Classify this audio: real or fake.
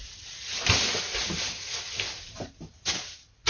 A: real